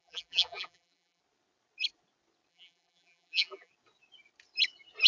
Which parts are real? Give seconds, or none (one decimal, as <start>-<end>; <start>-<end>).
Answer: 1.2-2.5; 3.7-5.1